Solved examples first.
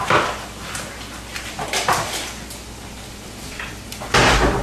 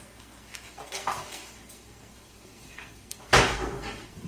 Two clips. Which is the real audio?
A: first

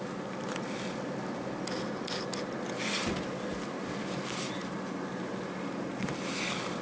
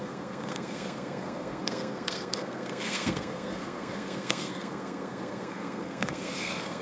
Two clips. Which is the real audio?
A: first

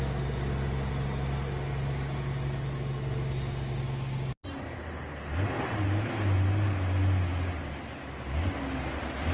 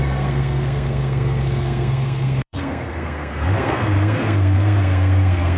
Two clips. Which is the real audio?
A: first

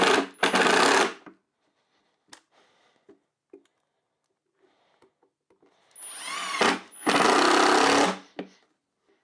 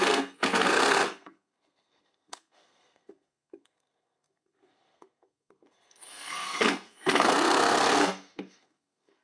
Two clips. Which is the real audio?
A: first